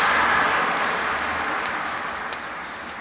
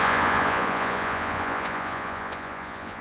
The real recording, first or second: first